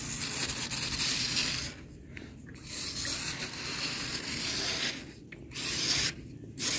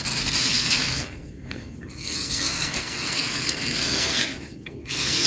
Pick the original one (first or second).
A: first